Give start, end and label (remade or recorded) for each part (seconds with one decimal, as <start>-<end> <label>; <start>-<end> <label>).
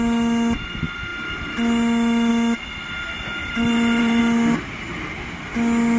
0.0-3.4 recorded; 3.4-4.2 remade; 4.2-6.0 recorded